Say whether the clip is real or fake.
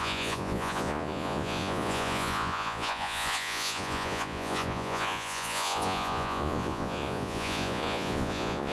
fake